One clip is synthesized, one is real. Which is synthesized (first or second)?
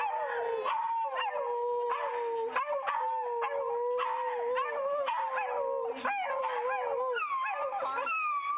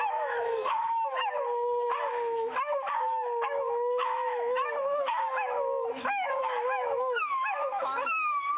second